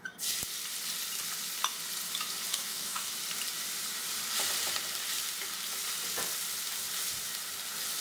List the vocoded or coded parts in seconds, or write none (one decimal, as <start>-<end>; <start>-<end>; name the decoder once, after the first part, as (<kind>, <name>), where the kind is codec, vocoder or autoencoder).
2.5-3.1 (codec, DAC)